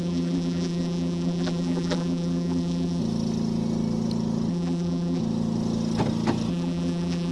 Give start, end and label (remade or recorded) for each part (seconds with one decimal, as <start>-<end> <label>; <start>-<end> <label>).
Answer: 0.0-3.0 remade; 3.0-4.5 recorded; 4.5-5.2 remade; 5.2-6.5 recorded; 6.5-7.3 remade